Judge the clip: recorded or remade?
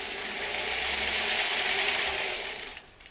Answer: remade